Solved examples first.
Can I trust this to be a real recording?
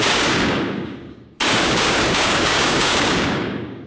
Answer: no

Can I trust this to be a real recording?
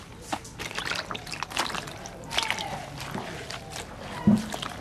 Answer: yes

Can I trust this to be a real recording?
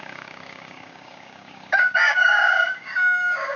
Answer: no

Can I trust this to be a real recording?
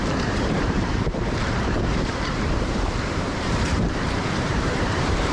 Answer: no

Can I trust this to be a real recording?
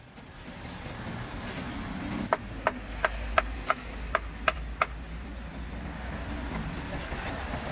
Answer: yes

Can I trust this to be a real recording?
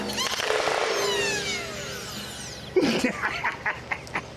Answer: yes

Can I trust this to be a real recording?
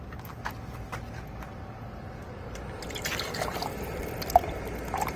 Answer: yes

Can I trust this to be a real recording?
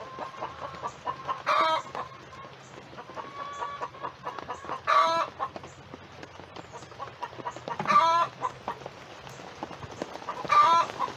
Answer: yes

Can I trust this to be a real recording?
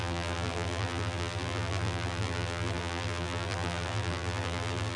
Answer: no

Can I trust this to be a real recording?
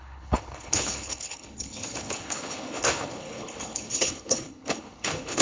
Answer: no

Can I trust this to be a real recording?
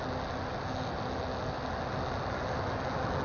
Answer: yes